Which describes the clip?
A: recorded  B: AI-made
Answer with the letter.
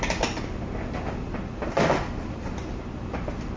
A